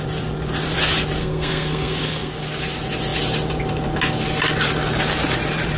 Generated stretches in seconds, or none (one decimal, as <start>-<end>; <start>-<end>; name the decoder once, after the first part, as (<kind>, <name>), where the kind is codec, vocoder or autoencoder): 1.2-2.3 (codec, SNAC)